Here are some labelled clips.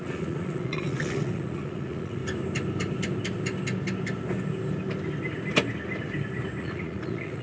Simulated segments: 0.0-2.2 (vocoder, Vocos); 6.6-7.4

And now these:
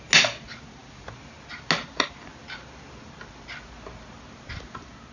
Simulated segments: none

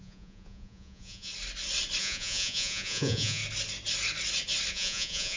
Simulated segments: 0.0-1.3 (vocoder, Vocos); 2.0-3.4; 4.7-5.4

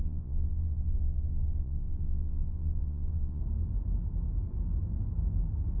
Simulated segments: 0.0-3.4 (vocoder, Vocos)

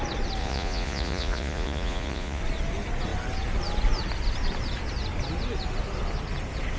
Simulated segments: 0.4-2.4 (vocoder, Vocos)

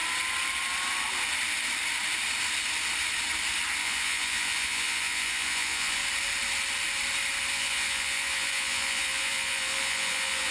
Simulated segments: 3.8-6.0 (vocoder, Vocos); 7.5-10.5

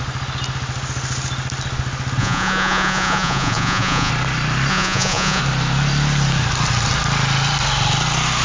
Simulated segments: 2.2-4.1 (vocoder, Vocos); 4.7-5.4